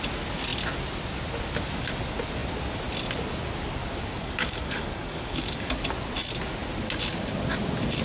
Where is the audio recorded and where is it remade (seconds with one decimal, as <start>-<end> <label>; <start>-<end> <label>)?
0.0-4.2 recorded; 4.2-5.8 remade; 5.8-8.0 recorded